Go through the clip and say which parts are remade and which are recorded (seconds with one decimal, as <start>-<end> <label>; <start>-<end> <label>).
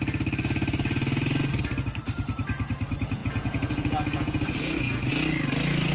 0.0-3.2 recorded; 3.2-5.1 remade; 5.1-5.9 recorded